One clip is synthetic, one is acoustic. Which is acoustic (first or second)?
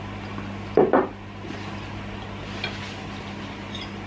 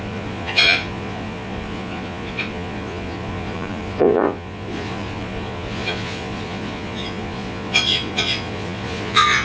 first